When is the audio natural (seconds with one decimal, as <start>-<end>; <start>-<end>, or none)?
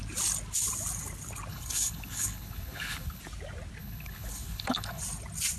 0.0-1.5; 3.2-3.8; 5.0-5.6